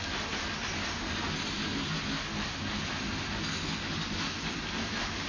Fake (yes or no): no